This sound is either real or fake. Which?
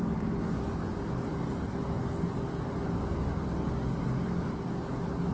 real